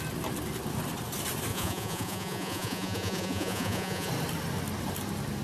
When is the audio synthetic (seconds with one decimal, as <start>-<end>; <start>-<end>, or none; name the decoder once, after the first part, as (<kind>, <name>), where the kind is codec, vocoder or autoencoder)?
1.5-4.1 (vocoder, Vocos)